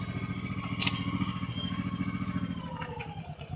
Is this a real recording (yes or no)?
yes